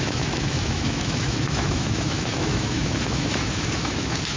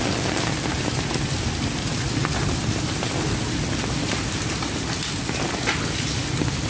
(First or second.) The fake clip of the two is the first